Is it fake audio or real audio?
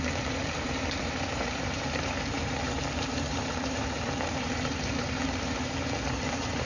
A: fake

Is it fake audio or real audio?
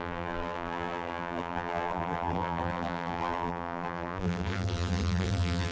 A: fake